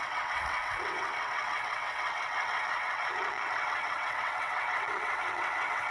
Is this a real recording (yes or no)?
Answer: no